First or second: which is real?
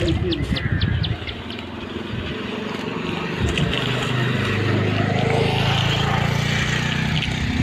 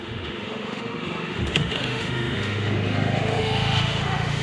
first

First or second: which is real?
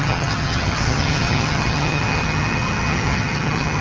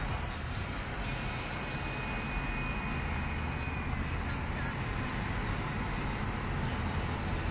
second